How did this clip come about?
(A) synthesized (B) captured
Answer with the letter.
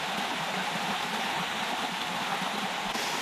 B